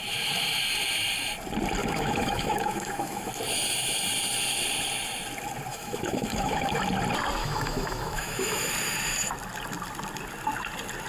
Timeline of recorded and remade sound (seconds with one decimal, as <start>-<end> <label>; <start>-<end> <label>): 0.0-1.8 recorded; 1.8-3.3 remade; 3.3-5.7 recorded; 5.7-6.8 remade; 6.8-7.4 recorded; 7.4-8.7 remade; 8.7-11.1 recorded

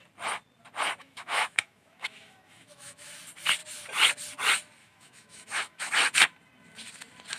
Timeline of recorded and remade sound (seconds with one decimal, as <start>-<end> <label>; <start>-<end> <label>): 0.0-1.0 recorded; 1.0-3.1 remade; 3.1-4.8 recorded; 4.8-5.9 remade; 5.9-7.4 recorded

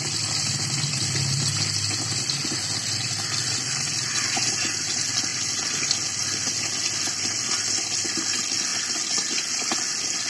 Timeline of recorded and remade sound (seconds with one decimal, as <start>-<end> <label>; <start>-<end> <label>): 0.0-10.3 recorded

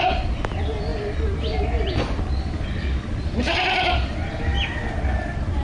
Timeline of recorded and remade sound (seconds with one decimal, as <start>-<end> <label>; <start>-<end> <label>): 0.0-5.6 recorded